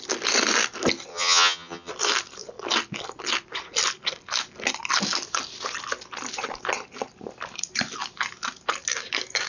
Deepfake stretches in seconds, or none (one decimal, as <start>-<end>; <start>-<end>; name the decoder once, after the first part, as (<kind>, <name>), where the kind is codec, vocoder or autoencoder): 1.1-1.9 (vocoder, HiFi-GAN)